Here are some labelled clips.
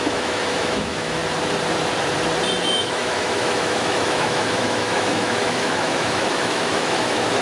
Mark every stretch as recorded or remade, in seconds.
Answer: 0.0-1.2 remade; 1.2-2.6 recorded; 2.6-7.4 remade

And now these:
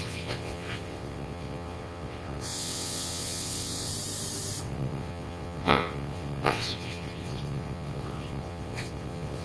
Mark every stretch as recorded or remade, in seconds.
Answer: 0.0-3.9 remade; 3.9-4.6 recorded; 4.6-9.4 remade